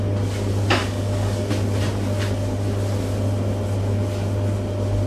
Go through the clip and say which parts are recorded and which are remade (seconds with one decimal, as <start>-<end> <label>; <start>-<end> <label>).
0.0-0.8 recorded; 0.8-1.5 remade; 1.5-5.1 recorded